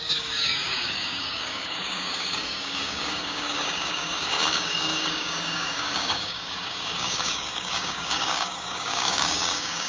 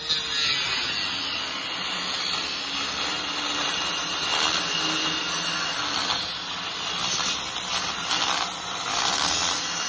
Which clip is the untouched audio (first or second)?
second